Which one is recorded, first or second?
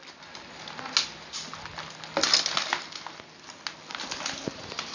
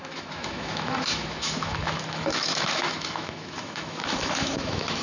first